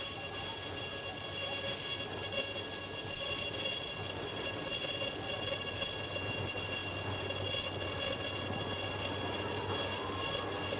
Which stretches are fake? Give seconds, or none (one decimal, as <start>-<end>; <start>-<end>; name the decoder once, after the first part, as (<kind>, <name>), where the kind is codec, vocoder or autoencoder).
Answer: none